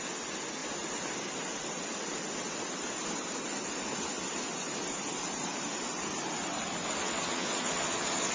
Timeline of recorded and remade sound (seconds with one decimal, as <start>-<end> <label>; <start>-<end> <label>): 0.0-7.0 recorded; 7.0-8.3 remade